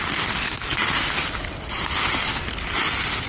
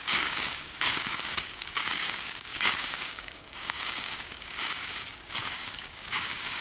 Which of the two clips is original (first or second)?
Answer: first